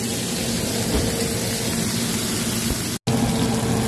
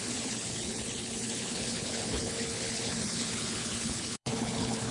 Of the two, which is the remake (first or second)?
second